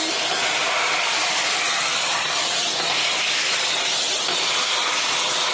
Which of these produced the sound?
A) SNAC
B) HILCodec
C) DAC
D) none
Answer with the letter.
D